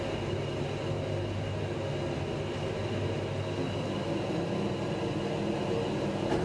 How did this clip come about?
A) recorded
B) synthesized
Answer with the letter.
A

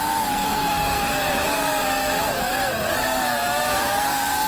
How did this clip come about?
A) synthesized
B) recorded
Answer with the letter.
A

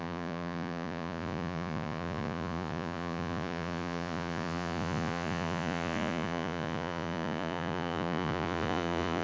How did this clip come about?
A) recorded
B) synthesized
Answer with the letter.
B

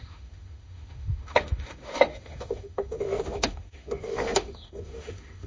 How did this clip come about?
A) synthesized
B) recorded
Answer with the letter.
A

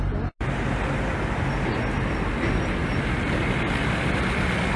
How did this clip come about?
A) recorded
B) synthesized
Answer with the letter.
A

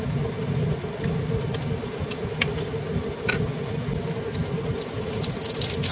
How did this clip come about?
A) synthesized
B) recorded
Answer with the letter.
B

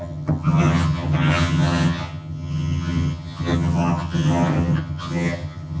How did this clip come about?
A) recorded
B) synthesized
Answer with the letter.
B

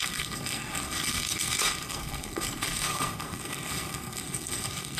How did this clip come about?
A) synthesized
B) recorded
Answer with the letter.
A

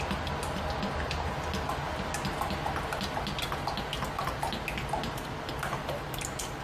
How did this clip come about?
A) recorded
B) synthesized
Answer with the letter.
A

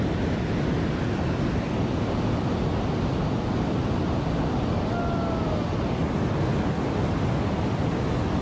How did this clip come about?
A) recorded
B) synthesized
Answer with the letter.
A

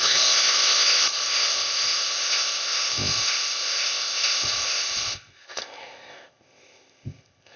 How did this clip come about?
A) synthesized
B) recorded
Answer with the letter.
A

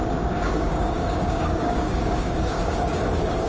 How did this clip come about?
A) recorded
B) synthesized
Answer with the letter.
B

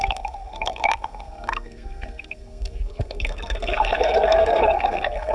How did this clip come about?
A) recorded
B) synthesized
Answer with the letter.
B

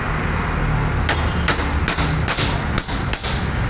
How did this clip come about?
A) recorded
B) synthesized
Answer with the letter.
A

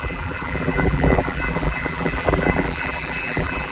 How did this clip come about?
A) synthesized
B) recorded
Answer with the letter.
A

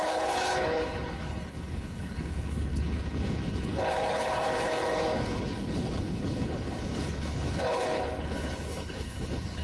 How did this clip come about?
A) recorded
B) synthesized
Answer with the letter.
B